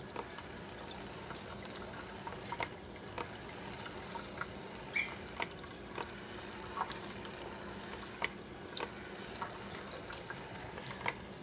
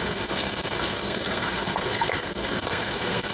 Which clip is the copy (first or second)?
second